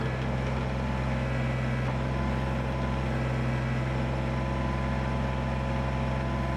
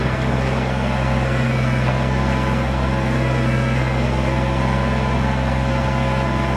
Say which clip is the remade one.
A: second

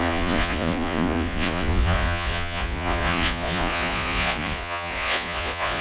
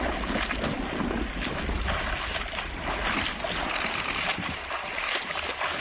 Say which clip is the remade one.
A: first